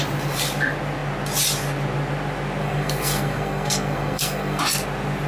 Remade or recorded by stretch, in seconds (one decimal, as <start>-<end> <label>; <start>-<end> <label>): 0.0-2.6 recorded; 2.6-4.6 remade; 4.6-5.3 recorded